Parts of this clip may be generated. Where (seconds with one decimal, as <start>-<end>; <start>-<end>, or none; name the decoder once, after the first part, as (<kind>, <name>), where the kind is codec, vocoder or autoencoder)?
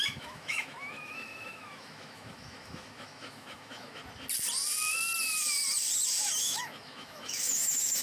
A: 0.0-4.0 (autoencoder, DAC-VAE); 6.4-8.0